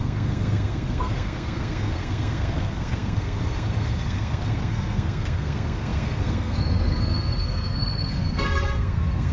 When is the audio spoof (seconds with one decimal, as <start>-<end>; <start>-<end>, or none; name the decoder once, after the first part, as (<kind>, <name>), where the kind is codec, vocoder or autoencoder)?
0.0-9.3 (codec, SNAC)